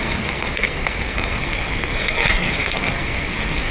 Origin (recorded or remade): remade